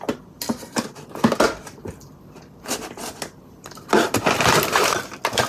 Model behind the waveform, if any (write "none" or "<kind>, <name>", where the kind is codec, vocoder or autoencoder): none